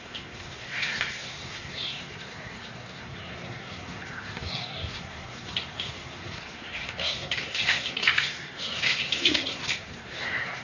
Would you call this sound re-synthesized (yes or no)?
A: yes